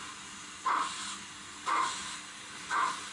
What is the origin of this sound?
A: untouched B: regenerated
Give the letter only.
A